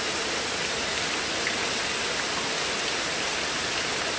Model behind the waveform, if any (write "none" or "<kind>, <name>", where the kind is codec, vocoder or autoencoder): none